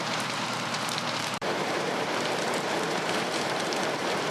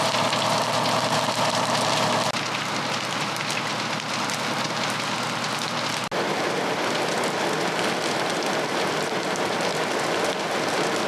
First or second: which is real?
second